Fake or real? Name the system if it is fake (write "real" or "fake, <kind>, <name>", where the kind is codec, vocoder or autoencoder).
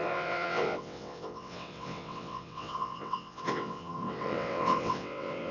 fake, vocoder, WaveNeXt